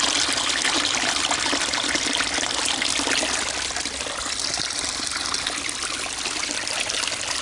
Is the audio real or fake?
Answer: real